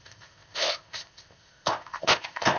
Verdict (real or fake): fake